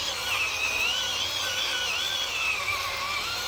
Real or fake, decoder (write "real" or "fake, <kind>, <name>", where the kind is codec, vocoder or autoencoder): real